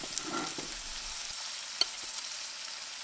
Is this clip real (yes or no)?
yes